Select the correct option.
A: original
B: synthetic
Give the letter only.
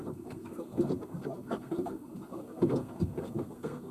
B